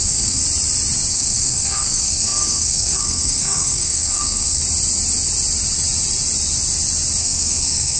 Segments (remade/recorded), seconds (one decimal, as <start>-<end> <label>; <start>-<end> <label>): 0.0-0.4 remade; 0.4-1.1 recorded; 1.1-4.6 remade; 4.6-7.2 recorded; 7.2-8.0 remade